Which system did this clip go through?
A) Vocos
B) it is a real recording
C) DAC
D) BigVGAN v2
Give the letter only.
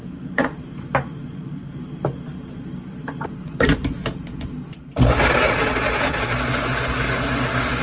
B